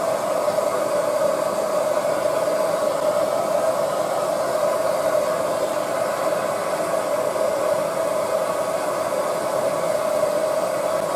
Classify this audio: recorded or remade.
recorded